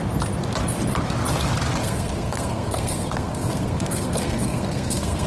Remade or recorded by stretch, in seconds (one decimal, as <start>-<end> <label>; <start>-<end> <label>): 0.0-1.8 recorded; 1.8-5.3 remade